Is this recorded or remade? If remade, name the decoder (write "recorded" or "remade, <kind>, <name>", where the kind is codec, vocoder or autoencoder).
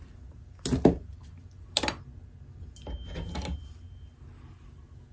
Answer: recorded